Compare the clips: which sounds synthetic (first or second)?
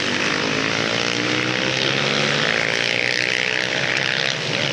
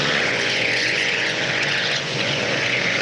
second